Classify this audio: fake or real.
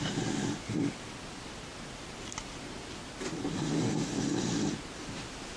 fake